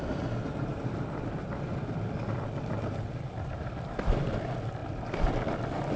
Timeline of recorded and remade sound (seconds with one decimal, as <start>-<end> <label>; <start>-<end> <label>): 0.0-0.7 recorded; 0.7-4.3 remade; 4.3-4.8 recorded; 4.8-5.3 remade; 5.3-6.0 recorded